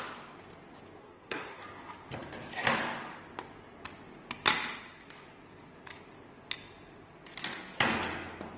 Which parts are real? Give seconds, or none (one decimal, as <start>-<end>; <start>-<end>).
0.0-1.0; 1.6-8.6